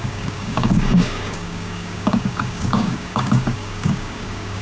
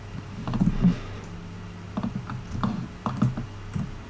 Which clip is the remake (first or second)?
first